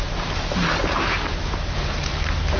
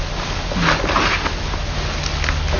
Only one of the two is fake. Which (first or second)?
first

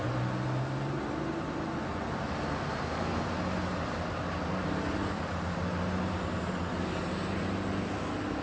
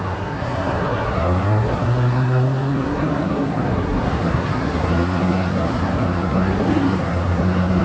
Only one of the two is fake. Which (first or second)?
second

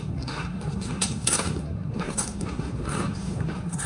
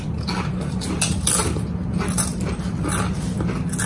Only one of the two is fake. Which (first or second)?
first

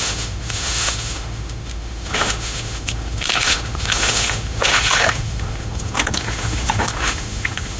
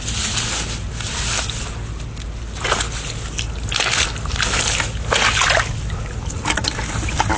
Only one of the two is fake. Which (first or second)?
first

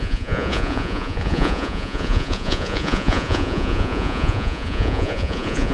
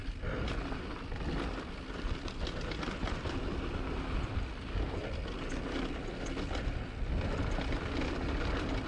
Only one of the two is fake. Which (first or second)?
first